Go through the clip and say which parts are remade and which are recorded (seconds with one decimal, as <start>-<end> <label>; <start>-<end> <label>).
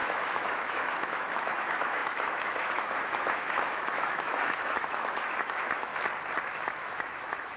0.0-5.9 remade; 5.9-6.5 recorded; 6.5-7.6 remade